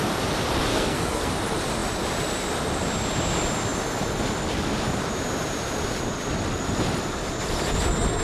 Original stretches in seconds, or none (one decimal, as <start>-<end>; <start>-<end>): 0.0-0.7; 1.3-8.2